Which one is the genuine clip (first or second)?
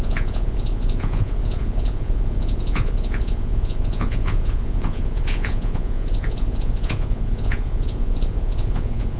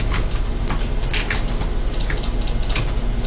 second